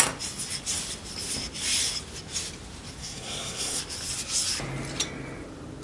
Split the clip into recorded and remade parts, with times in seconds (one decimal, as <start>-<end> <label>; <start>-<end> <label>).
0.0-3.0 recorded; 3.0-3.8 remade; 3.8-5.8 recorded